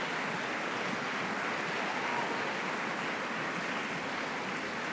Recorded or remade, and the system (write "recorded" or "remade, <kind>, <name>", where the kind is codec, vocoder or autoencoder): recorded